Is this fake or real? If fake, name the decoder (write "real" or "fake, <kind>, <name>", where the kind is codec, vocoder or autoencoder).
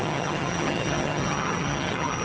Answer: fake, vocoder, HiFi-GAN